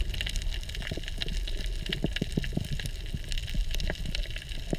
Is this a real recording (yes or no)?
yes